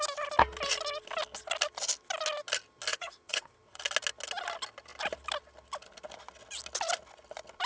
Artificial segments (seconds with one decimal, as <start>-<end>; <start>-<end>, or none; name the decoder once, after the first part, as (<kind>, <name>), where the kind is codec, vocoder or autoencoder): 2.9-3.8 (vocoder, WaveNeXt)